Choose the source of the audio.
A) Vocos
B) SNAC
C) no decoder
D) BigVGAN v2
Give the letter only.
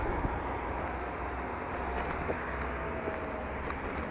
C